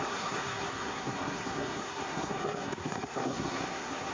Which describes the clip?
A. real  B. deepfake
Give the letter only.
B